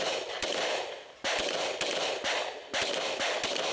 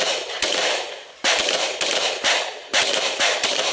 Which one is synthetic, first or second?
second